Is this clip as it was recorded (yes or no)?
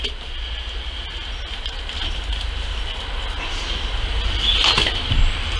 yes